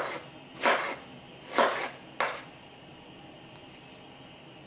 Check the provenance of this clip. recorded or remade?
recorded